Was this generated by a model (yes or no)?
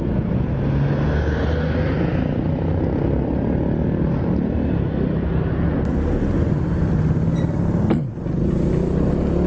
no